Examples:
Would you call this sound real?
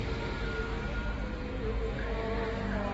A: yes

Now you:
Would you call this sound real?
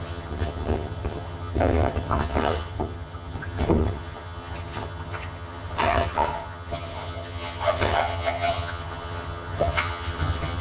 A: no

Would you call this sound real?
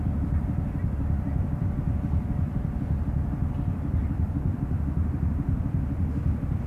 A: no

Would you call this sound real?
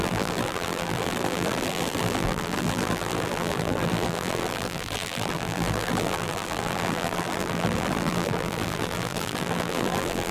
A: no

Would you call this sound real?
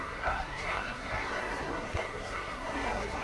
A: no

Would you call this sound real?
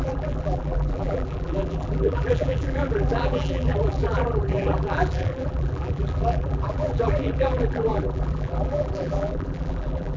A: no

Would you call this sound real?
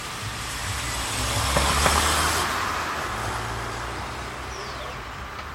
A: yes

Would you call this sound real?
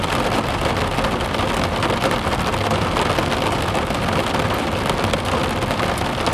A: yes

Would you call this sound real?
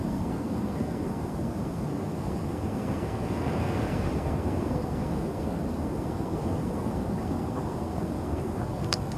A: no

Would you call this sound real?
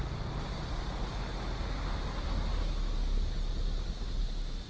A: yes